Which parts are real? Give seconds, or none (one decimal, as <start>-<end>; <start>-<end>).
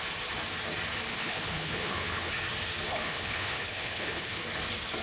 0.0-1.1; 2.3-2.9; 4.4-5.0